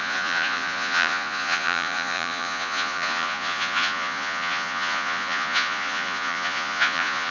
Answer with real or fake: fake